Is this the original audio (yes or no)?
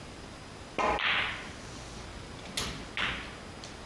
yes